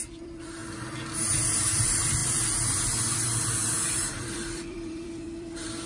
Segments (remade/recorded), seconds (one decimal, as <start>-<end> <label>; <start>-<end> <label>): 0.0-0.6 remade; 0.6-1.5 recorded; 1.5-5.9 remade